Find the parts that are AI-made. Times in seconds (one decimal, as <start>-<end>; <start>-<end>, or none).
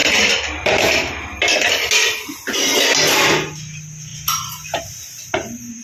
0.0-1.7